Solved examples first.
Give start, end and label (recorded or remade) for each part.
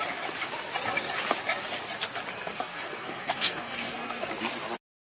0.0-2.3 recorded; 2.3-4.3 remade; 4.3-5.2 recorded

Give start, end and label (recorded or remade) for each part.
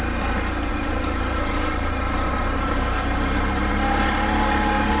0.0-0.7 recorded; 0.7-3.7 remade; 3.7-5.0 recorded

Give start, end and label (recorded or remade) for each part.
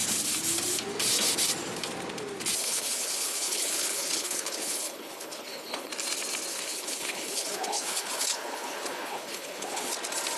0.0-2.6 recorded; 2.6-5.9 remade; 5.9-6.5 recorded; 6.5-9.9 remade; 9.9-10.4 recorded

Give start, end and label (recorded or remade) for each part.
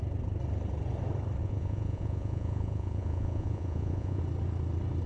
0.0-1.4 recorded; 1.4-4.2 remade; 4.2-5.1 recorded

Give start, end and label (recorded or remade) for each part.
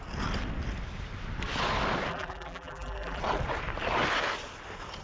0.0-2.1 recorded; 2.1-3.2 remade; 3.2-5.0 recorded